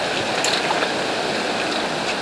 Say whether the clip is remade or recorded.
recorded